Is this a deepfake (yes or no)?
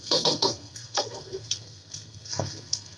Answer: yes